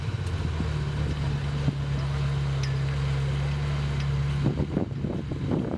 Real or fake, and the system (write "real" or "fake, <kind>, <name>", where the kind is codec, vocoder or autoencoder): real